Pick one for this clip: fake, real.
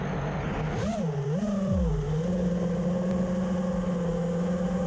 real